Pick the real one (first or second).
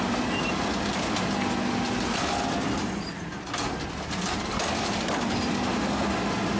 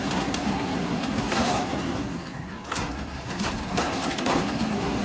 first